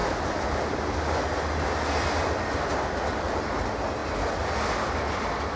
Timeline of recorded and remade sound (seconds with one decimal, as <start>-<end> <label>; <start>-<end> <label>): 0.0-5.6 recorded